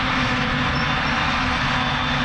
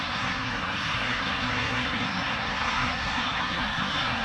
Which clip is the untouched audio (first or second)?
first